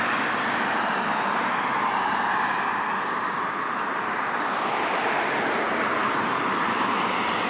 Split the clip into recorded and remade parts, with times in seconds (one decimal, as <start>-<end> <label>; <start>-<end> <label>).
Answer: 0.0-7.5 recorded